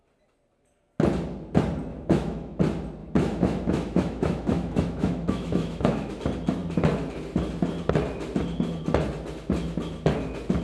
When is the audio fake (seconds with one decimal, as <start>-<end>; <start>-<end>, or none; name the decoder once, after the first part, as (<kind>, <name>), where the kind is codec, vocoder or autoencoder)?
1.9-2.6 (autoencoder, DAC-VAE); 3.0-6.1